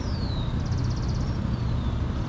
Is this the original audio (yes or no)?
yes